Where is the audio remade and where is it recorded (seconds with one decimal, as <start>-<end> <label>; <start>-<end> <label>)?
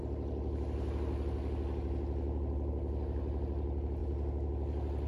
0.0-5.1 recorded